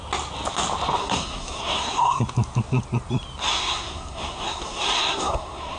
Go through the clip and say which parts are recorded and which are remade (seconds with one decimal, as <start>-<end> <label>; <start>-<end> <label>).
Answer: 0.0-1.0 recorded; 1.0-2.2 remade; 2.2-3.5 recorded; 3.5-5.8 remade